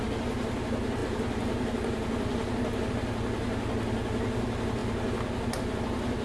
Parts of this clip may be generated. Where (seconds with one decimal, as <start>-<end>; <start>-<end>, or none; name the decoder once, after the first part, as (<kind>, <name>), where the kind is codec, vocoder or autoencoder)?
none